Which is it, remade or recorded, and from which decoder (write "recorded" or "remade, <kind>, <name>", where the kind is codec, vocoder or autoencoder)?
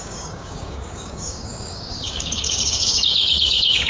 remade, codec, DAC